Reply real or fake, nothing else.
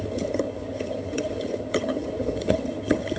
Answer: fake